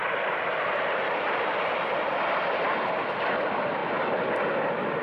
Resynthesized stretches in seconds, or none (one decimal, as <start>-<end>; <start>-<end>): 0.0-3.0; 3.8-5.0